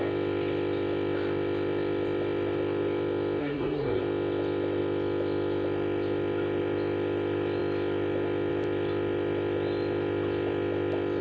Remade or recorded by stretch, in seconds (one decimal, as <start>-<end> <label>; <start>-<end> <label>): 0.0-3.4 recorded; 3.4-4.0 remade; 4.0-11.2 recorded